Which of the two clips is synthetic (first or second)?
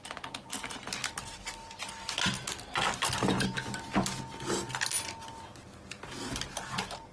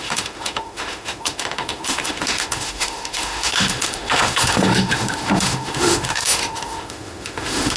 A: second